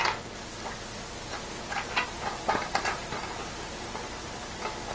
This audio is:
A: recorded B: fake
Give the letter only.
A